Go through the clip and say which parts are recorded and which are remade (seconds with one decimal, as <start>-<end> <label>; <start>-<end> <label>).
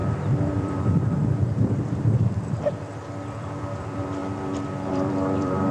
0.0-0.5 recorded; 0.5-4.2 remade; 4.2-4.9 recorded; 4.9-5.7 remade